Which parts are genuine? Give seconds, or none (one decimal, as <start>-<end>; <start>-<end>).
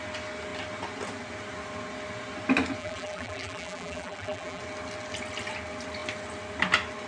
0.0-2.8; 4.6-7.1